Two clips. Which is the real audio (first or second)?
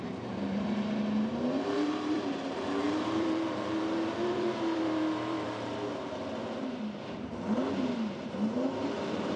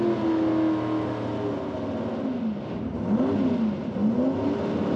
second